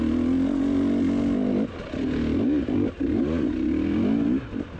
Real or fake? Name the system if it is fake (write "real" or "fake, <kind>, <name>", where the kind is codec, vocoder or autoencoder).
real